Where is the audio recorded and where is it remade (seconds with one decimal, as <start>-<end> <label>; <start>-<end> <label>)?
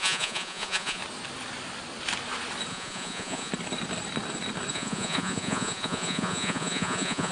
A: 0.0-1.0 remade; 1.0-2.7 recorded; 2.7-3.5 remade; 3.5-4.7 recorded; 4.7-7.3 remade